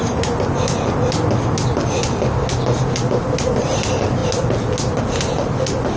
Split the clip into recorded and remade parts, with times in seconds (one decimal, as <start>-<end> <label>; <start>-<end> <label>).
0.0-6.0 recorded